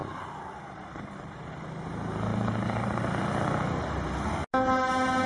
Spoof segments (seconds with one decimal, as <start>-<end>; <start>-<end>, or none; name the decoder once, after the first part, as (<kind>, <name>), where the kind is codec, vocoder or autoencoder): 0.0-1.5 (vocoder, BigVGAN v2); 2.3-3.1